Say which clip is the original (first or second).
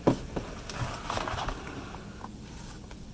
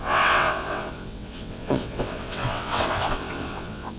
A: first